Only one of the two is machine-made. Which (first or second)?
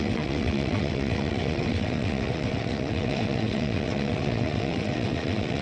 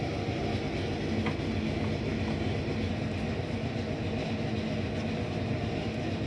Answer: first